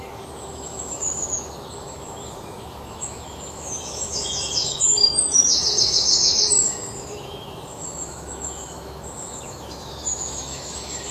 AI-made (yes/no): yes